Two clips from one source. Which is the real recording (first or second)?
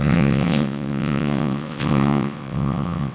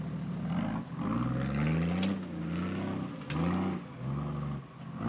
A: second